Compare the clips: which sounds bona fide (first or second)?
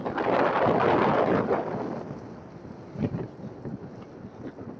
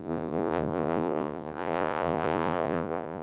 first